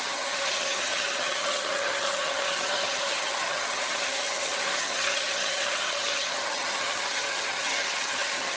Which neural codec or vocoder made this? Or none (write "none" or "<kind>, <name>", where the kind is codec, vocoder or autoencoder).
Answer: vocoder, HiFi-GAN